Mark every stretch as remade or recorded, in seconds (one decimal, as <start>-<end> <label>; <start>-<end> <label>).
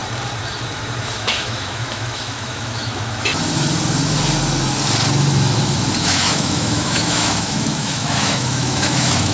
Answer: 0.0-1.0 recorded; 1.0-3.3 remade; 3.3-6.0 recorded; 6.0-9.3 remade